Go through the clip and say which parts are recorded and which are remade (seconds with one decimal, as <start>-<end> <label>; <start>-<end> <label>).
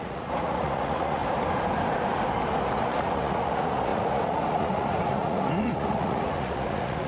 0.0-1.2 remade; 1.2-2.7 recorded; 2.7-7.1 remade